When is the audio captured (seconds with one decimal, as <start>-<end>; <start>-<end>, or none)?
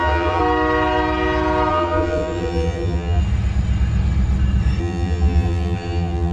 0.4-1.7; 3.2-4.8